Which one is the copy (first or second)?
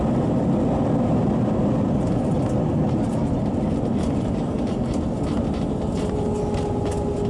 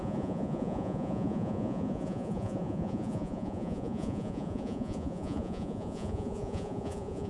second